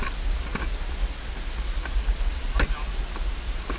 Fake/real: real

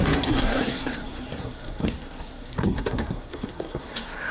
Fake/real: fake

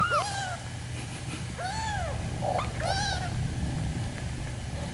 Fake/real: real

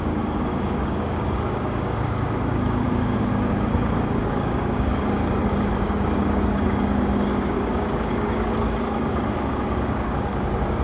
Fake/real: fake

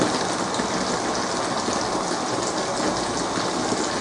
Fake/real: real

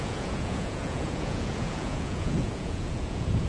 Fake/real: fake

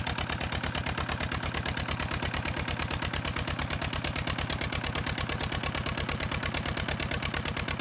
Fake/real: real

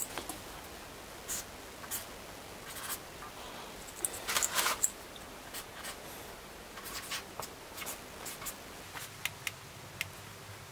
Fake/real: real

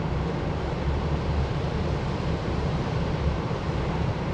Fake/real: fake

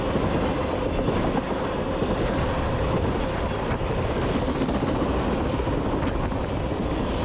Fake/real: real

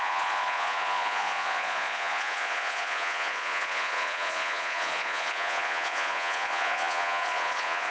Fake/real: fake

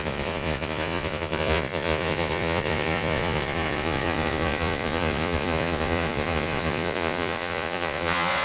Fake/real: fake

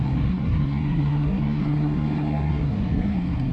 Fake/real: fake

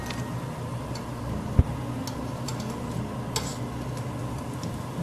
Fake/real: real